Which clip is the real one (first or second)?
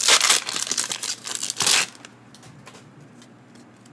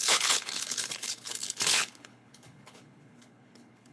first